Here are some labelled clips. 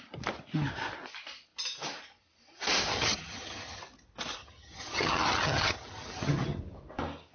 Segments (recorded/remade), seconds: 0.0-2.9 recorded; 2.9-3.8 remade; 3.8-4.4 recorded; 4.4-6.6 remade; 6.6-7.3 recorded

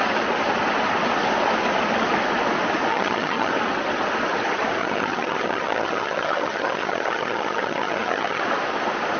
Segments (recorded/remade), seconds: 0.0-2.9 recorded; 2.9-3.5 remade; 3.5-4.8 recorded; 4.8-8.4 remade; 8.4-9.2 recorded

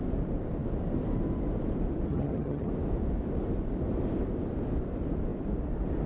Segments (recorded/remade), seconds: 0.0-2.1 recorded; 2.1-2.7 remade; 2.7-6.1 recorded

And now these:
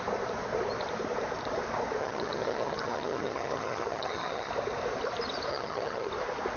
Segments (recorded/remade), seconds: 0.0-2.0 recorded; 2.0-4.5 remade; 4.5-5.5 recorded; 5.5-6.1 remade; 6.1-6.6 recorded

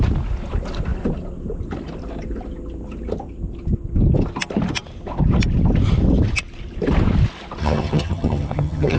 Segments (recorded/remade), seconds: 0.0-7.6 recorded; 7.6-9.0 remade

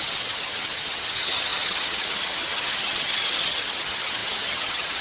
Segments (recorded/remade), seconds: 0.0-5.0 remade